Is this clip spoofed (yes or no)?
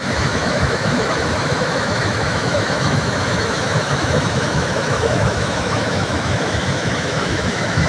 yes